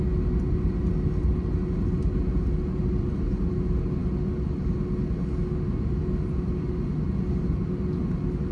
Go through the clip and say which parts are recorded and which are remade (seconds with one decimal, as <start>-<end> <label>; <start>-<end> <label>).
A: 0.0-8.5 recorded